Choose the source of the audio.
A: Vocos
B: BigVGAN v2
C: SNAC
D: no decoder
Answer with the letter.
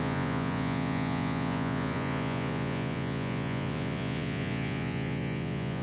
A